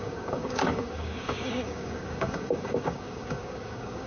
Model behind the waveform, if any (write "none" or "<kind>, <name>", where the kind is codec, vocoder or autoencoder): codec, DAC